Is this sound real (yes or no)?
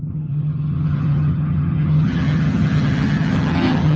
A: no